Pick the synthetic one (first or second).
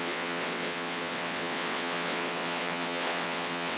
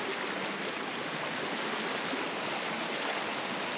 first